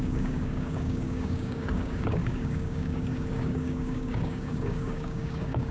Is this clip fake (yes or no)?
yes